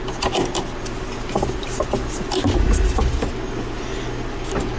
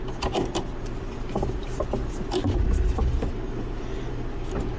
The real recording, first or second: first